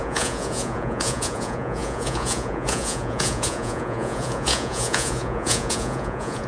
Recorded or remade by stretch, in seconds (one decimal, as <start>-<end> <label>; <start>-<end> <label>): 0.0-6.5 remade